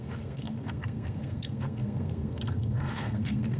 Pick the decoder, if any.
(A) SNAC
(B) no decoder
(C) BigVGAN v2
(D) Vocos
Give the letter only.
A